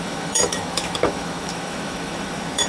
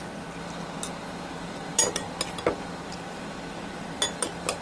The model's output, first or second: first